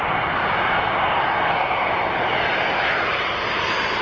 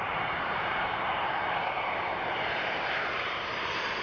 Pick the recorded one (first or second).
first